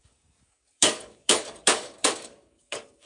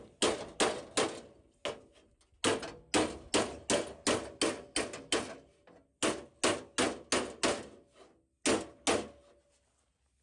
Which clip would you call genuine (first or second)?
second